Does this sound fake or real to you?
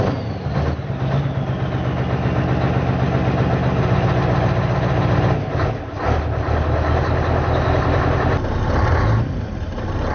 real